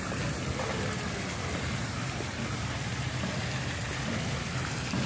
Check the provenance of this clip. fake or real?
real